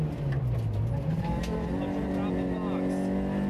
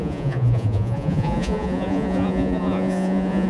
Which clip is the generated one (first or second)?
second